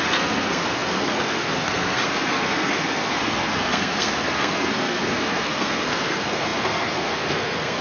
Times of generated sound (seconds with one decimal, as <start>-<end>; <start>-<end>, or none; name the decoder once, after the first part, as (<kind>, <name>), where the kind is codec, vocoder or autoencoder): 0.0-7.8 (codec, SNAC)